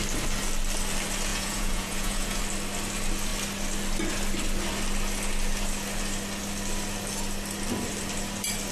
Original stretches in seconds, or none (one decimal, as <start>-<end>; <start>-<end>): 0.0-1.3; 2.4-8.7